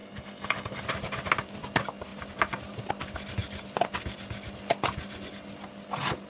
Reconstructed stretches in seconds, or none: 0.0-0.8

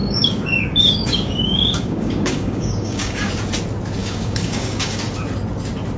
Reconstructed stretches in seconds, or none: 0.0-3.3; 4.0-5.0

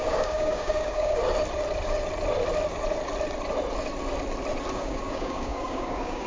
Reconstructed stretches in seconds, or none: 0.0-1.2; 4.7-6.3

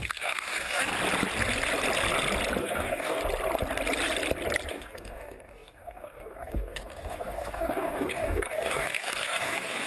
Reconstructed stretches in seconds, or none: 0.0-0.9; 2.6-3.2; 4.7-9.9